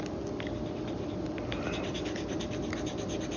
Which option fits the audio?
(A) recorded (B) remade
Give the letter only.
A